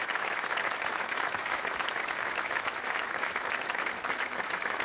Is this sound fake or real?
fake